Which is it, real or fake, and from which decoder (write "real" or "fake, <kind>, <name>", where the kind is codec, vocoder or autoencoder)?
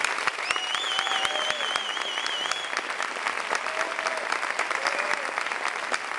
real